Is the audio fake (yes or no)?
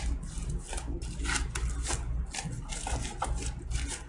no